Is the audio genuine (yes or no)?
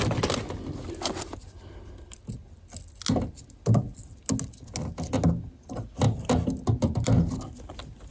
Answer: yes